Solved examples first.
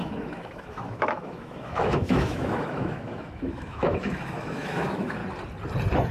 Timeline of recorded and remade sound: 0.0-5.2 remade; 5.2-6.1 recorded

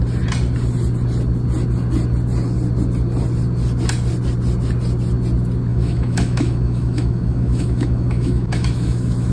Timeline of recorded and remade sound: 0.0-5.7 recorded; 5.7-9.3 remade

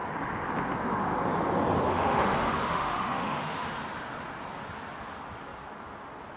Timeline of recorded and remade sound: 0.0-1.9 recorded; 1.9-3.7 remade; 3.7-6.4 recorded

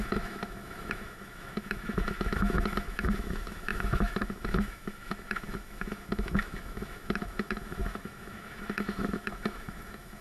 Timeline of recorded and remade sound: 0.0-10.2 remade

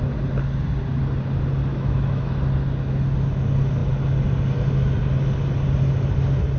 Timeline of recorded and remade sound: 0.0-1.7 recorded; 1.7-2.4 remade; 2.4-6.6 recorded

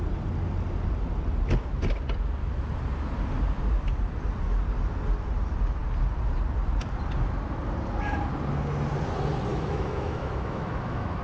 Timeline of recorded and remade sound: 0.0-9.5 recorded; 9.5-11.2 remade